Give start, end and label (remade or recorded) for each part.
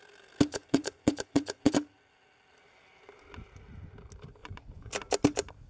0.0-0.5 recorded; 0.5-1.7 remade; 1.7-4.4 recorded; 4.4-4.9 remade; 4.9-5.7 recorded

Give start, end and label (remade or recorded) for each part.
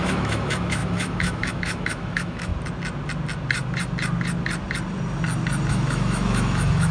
0.0-2.5 remade; 2.5-5.7 recorded; 5.7-6.9 remade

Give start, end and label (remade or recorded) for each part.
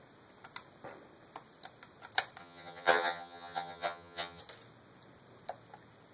0.0-2.4 recorded; 2.4-4.4 remade; 4.4-6.1 recorded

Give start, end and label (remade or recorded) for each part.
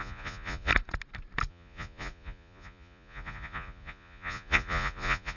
0.0-0.7 remade; 0.7-1.5 recorded; 1.5-5.4 remade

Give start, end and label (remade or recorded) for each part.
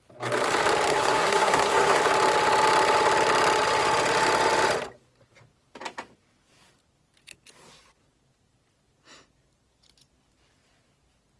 0.0-0.9 recorded; 0.9-2.0 remade; 2.0-11.4 recorded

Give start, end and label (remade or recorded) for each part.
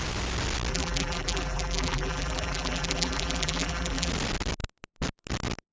0.0-0.7 recorded; 0.7-4.1 remade; 4.1-5.7 recorded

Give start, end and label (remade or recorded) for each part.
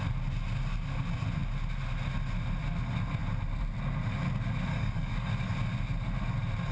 0.0-4.7 recorded; 4.7-5.3 remade; 5.3-6.7 recorded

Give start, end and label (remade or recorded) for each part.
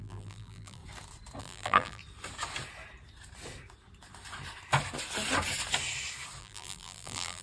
0.0-0.8 remade; 0.8-1.4 recorded; 1.4-2.0 remade; 2.0-6.4 recorded; 6.4-7.4 remade